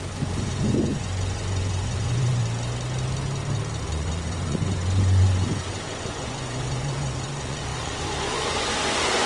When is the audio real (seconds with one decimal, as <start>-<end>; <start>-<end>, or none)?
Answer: 2.4-3.8